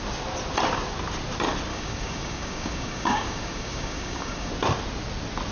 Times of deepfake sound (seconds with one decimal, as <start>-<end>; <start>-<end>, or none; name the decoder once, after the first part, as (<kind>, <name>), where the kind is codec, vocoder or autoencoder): 1.7-4.5 (codec, DAC)